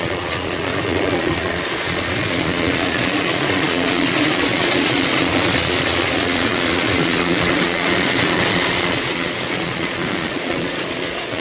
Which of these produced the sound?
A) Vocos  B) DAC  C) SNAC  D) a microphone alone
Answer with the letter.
A